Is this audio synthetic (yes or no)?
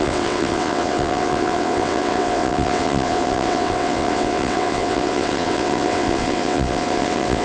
yes